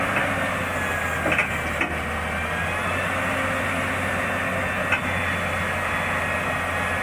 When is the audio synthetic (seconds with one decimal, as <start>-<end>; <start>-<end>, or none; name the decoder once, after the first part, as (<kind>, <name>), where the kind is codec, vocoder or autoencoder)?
none